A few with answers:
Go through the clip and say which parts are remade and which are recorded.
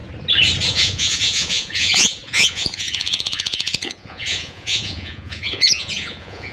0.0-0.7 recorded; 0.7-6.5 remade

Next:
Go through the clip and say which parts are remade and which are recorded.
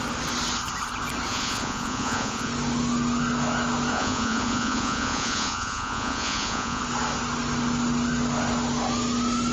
0.0-1.3 recorded; 1.3-2.5 remade; 2.5-3.9 recorded; 3.9-6.8 remade; 6.8-9.5 recorded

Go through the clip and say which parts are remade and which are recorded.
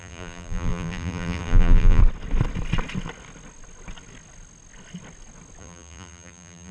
0.0-2.0 remade; 2.0-5.6 recorded; 5.6-6.7 remade